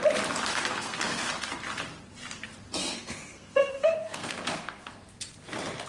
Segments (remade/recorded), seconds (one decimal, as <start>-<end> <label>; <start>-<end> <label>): 0.0-0.5 recorded; 0.5-1.3 remade; 1.3-2.8 recorded; 2.8-5.2 remade; 5.2-5.9 recorded